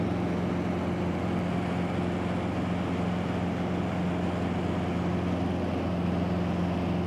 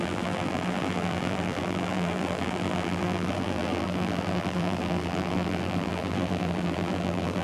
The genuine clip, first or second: first